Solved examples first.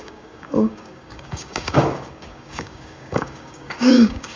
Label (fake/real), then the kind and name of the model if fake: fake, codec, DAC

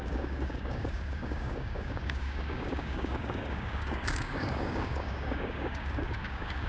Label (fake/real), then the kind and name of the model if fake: fake, codec, DAC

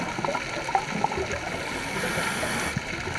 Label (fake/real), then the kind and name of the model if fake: real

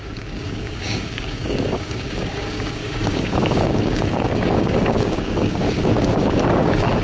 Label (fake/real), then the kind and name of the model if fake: fake, codec, DAC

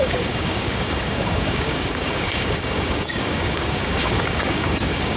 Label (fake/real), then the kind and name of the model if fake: fake, codec, DAC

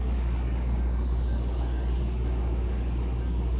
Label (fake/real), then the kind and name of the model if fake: fake, codec, DAC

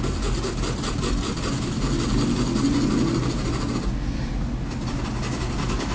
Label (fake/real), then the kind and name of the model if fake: real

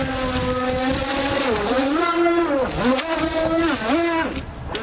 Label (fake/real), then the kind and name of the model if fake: real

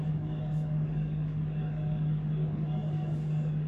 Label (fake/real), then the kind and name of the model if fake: fake, codec, DAC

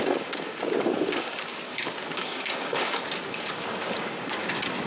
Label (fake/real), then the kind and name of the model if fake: fake, codec, DAC